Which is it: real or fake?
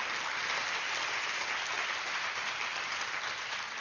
real